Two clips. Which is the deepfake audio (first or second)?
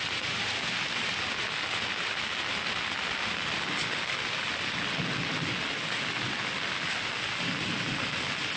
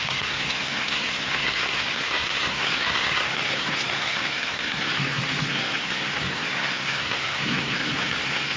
second